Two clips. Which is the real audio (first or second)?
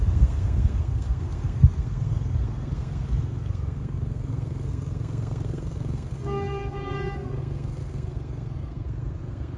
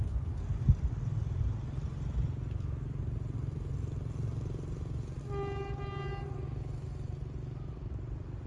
second